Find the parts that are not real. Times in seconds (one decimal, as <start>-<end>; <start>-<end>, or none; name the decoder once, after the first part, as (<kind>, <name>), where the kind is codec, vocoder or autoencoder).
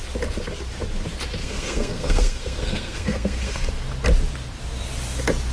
1.4-3.7 (codec, SNAC)